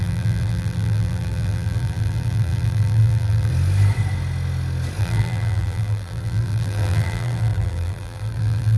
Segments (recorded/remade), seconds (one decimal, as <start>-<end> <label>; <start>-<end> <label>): 0.0-3.5 remade; 3.5-5.0 recorded; 5.0-8.8 remade

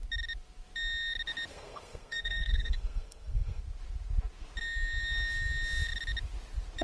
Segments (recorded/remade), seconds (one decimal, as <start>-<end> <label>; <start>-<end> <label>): 0.0-1.5 recorded; 1.5-3.6 remade; 3.6-6.8 recorded